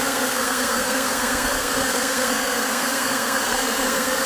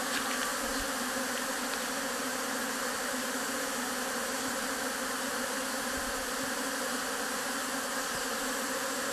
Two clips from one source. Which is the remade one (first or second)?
first